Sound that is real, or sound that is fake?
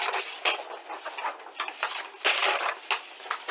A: real